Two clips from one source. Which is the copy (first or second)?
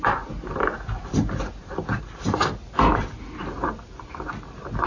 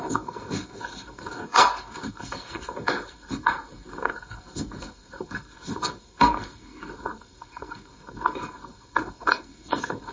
second